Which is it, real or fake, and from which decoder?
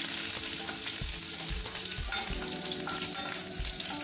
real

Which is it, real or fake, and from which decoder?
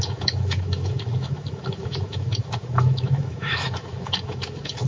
fake, autoencoder, DAC-VAE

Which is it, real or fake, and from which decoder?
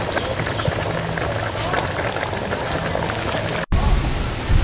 real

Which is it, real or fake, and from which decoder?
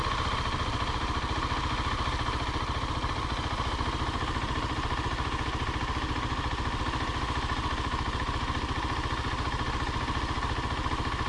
real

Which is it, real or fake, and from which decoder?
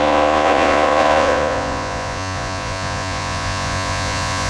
fake, vocoder, Vocos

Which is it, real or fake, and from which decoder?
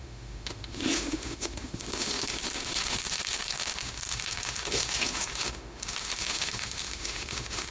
fake, autoencoder, DAC-VAE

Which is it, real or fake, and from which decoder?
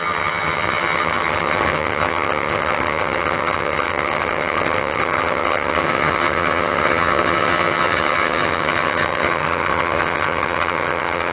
fake, vocoder, HiFi-GAN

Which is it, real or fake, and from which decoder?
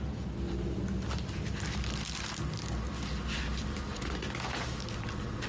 real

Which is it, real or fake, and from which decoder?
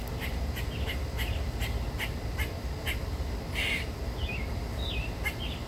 fake, vocoder, BigVGAN v2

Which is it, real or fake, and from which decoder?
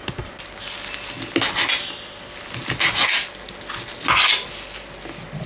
real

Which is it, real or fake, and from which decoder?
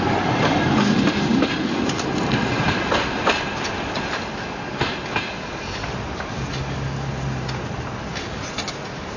real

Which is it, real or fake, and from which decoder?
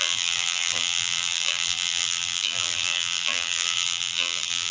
fake, vocoder, BigVGAN v2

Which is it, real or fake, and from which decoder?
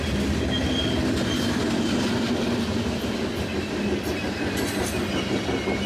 real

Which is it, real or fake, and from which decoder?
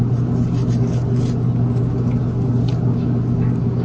real